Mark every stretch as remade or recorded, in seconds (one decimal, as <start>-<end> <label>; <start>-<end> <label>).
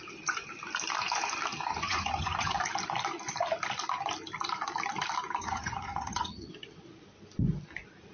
0.0-1.7 recorded; 1.7-2.6 remade; 2.6-5.4 recorded; 5.4-6.5 remade; 6.5-8.1 recorded